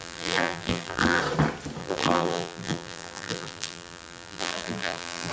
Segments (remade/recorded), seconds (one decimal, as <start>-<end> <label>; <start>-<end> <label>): 0.0-1.2 remade; 1.2-1.8 recorded; 1.8-5.3 remade